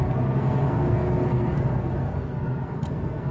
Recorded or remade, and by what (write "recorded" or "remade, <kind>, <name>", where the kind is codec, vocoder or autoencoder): remade, codec, SNAC